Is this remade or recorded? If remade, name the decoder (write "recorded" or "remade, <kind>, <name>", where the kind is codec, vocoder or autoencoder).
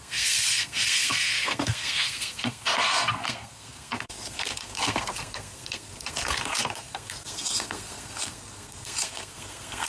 remade, codec, SNAC